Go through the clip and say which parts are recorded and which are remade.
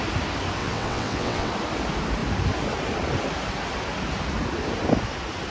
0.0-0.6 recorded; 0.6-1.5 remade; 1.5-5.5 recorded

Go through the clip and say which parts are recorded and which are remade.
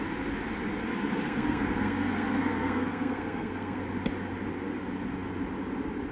0.0-0.8 recorded; 0.8-3.8 remade; 3.8-6.1 recorded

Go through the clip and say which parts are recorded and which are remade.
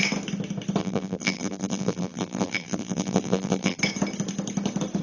0.0-0.8 recorded; 0.8-3.8 remade; 3.8-5.0 recorded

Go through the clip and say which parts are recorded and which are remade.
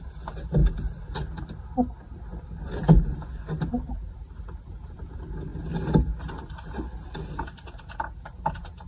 0.0-8.9 recorded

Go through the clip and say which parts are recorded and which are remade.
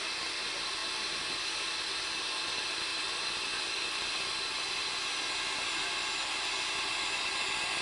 0.0-0.8 recorded; 0.8-1.5 remade; 1.5-2.9 recorded; 2.9-4.8 remade; 4.8-7.8 recorded